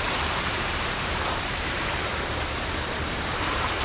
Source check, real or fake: fake